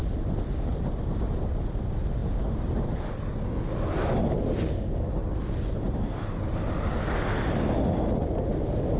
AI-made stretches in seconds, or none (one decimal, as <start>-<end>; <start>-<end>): none